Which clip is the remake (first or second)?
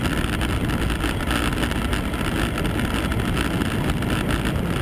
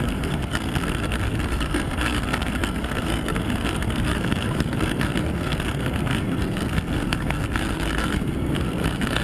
second